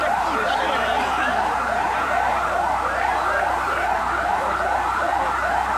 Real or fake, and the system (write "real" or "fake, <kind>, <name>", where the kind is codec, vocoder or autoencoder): fake, vocoder, BigVGAN v2